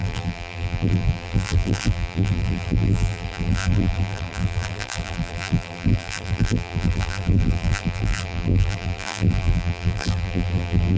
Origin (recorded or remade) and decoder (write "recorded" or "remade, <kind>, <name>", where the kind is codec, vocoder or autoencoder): remade, vocoder, BigVGAN v2